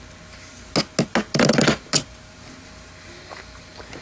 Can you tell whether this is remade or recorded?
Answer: recorded